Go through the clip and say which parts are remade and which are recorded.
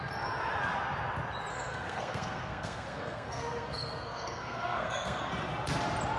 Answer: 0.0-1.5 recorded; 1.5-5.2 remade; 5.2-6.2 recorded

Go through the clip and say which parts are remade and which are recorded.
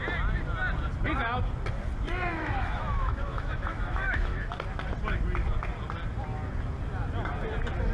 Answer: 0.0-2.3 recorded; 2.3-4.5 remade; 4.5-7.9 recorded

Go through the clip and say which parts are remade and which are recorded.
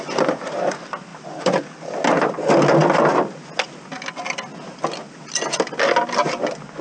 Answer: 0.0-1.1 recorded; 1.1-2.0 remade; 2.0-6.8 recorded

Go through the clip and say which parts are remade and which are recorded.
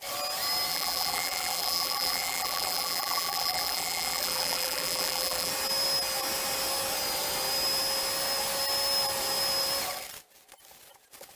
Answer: 0.0-0.7 recorded; 0.7-5.5 remade; 5.5-11.4 recorded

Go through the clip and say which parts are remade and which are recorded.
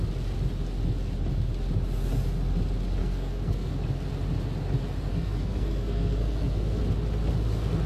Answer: 0.0-3.0 recorded; 3.0-3.7 remade; 3.7-5.1 recorded; 5.1-6.8 remade; 6.8-7.9 recorded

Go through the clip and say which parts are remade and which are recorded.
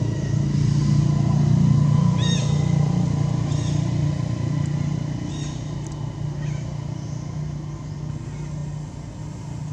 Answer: 0.0-9.7 recorded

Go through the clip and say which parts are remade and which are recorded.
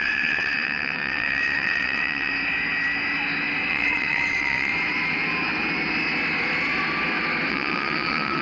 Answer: 0.0-2.3 remade; 2.3-3.7 recorded; 3.7-4.7 remade; 4.7-7.5 recorded; 7.5-8.4 remade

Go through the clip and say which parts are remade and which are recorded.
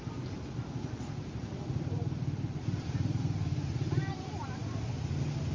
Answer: 0.0-4.6 remade; 4.6-5.5 recorded